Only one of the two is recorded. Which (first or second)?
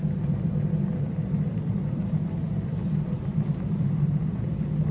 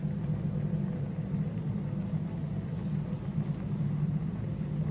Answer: second